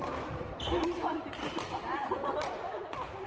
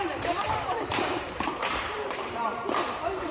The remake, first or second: second